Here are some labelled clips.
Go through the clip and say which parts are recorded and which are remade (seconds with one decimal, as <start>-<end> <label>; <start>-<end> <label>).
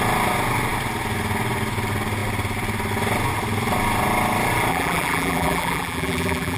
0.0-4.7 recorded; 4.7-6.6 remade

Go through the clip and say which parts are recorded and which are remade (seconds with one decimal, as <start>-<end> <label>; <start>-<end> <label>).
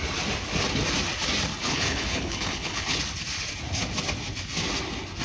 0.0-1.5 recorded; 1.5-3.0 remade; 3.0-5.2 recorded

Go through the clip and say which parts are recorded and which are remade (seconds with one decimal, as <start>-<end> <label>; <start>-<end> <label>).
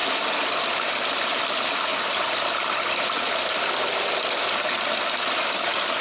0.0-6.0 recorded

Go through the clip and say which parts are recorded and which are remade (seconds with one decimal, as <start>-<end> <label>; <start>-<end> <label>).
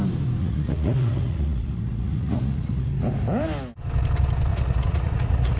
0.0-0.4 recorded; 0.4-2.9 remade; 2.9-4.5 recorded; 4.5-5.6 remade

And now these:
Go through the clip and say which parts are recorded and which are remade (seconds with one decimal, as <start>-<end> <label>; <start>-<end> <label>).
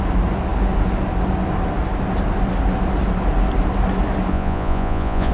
0.0-4.3 recorded; 4.3-5.3 remade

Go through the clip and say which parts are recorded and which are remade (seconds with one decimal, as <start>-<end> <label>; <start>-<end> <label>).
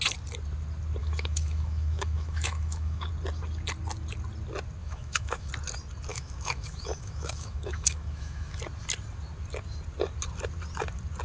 0.0-1.0 recorded; 1.0-3.1 remade; 3.1-4.8 recorded; 4.8-5.5 remade; 5.5-6.1 recorded; 6.1-8.6 remade; 8.6-11.2 recorded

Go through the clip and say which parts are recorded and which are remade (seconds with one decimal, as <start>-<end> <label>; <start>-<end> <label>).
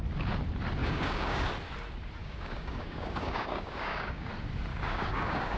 0.0-0.8 recorded; 0.8-1.5 remade; 1.5-2.2 recorded; 2.2-4.3 remade; 4.3-4.7 recorded; 4.7-5.6 remade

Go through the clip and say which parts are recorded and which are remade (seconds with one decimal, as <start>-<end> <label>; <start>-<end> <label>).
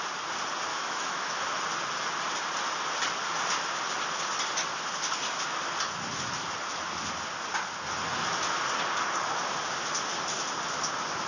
0.0-0.7 recorded; 0.7-1.4 remade; 1.4-11.3 recorded